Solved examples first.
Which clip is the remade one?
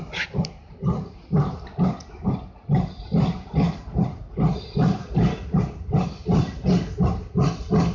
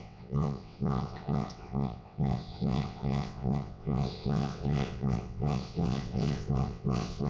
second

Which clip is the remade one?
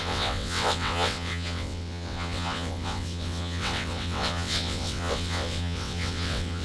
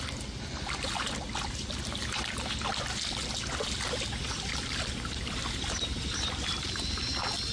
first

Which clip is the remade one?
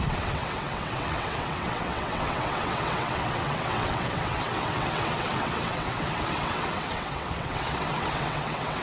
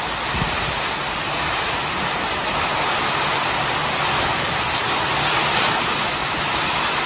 first